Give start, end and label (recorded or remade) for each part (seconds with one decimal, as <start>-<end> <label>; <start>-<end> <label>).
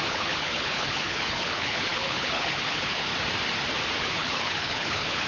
0.0-3.1 remade; 3.1-4.0 recorded; 4.0-5.3 remade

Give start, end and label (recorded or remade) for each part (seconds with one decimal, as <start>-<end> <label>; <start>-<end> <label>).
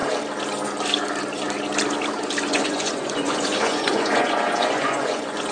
0.0-2.5 recorded; 2.5-5.5 remade